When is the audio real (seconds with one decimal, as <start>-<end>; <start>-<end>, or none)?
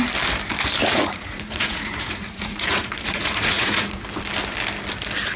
0.0-0.8; 4.0-5.4